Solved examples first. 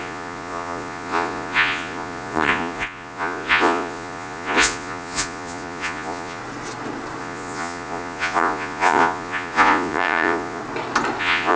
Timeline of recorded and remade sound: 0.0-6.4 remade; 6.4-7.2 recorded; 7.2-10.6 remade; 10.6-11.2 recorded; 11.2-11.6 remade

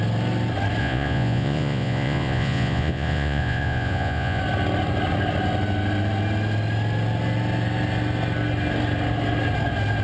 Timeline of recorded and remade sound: 0.0-0.8 recorded; 0.8-4.4 remade; 4.4-10.0 recorded

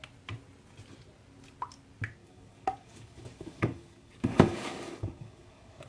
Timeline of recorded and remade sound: 0.0-2.2 recorded; 2.2-5.9 remade

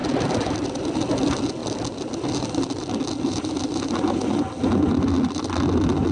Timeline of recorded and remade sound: 0.0-6.1 recorded

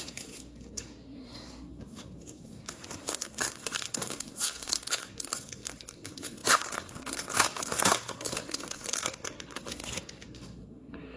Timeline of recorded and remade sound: 0.0-11.2 remade

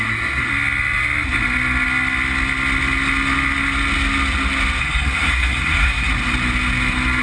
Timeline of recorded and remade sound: 0.0-0.5 remade; 0.5-4.8 recorded; 4.8-6.1 remade; 6.1-7.2 recorded